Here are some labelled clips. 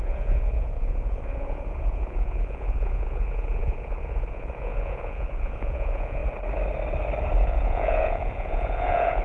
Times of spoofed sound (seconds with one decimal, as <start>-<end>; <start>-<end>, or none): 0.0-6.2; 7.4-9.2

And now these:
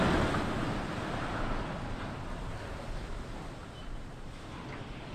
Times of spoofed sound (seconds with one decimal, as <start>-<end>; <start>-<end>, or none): 3.6-4.1

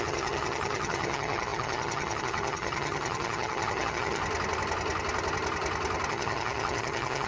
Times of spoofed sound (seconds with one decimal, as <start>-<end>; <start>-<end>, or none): 0.0-4.2; 6.1-7.3

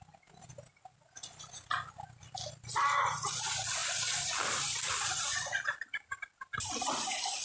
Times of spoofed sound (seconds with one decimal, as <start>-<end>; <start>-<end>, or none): 3.8-5.8